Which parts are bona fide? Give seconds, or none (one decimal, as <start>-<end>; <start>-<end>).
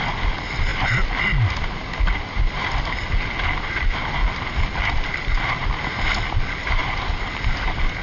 0.0-8.0